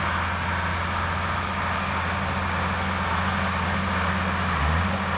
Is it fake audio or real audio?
real